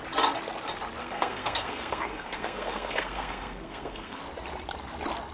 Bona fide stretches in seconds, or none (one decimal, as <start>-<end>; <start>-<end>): 0.0-1.0; 4.2-5.3